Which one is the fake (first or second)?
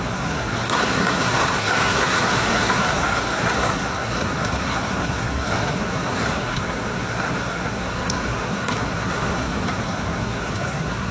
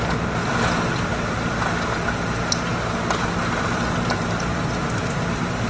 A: first